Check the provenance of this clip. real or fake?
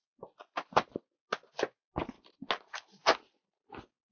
real